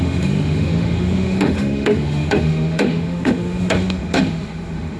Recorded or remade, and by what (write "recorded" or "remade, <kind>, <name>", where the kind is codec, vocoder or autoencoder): remade, autoencoder, DAC-VAE